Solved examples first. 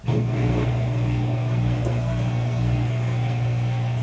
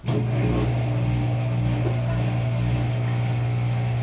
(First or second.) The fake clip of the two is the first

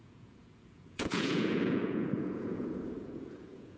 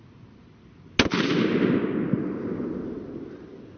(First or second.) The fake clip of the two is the first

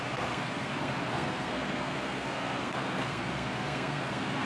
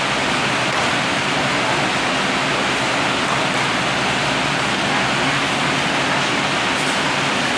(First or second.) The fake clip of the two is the first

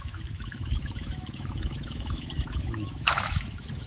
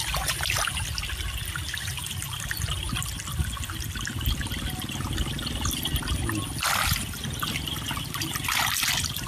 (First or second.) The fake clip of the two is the first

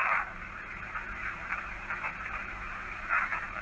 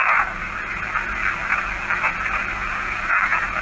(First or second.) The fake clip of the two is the first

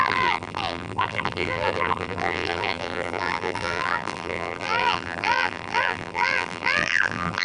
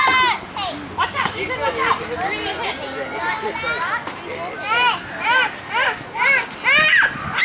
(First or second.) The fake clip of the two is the first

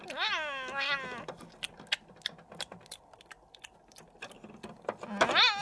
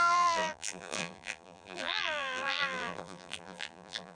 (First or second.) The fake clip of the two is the second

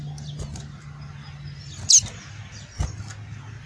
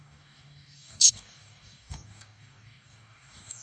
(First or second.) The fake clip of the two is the second